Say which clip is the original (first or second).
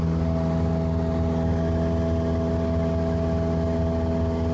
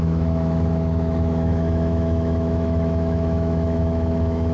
first